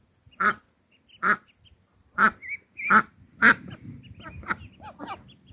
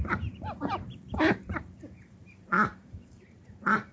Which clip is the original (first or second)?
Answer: first